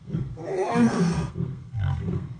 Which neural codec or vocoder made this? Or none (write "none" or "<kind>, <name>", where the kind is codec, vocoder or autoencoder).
codec, SNAC